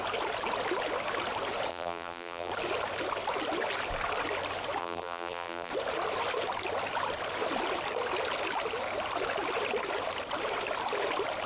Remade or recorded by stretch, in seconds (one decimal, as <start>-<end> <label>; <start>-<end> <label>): 0.0-1.7 recorded; 1.7-2.5 remade; 2.5-4.8 recorded; 4.8-5.7 remade; 5.7-11.5 recorded